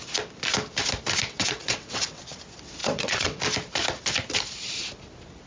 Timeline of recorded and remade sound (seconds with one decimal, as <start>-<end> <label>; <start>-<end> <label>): 0.0-1.3 recorded; 1.3-2.2 remade; 2.2-2.8 recorded; 2.8-3.4 remade; 3.4-5.5 recorded